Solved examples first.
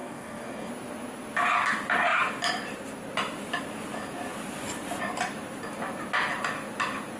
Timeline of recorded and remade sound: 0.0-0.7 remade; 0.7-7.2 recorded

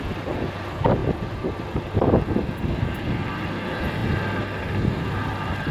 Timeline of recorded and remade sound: 0.0-5.7 recorded

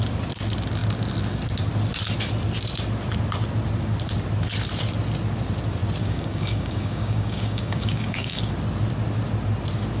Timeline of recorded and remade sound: 0.0-6.0 recorded; 6.0-8.5 remade; 8.5-10.0 recorded

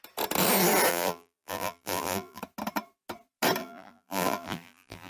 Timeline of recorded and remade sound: 0.0-0.9 recorded; 0.9-2.4 remade; 2.4-3.6 recorded; 3.6-5.1 remade

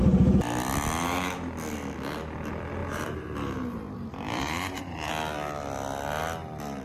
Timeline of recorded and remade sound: 0.0-2.8 recorded; 2.8-5.1 remade; 5.1-6.8 recorded

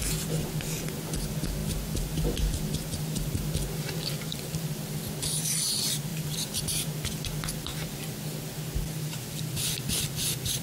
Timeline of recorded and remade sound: 0.0-7.7 remade; 7.7-8.8 recorded; 8.8-10.6 remade